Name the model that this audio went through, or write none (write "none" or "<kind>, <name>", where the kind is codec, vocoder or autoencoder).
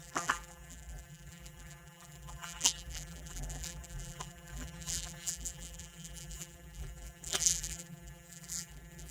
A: vocoder, BigVGAN v2